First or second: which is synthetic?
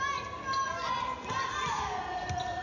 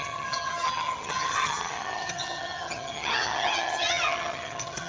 second